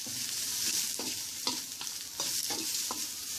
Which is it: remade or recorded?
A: recorded